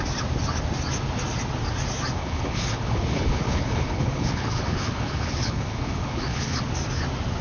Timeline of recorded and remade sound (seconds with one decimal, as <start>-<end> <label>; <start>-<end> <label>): 0.0-2.2 recorded; 2.2-6.6 remade; 6.6-7.4 recorded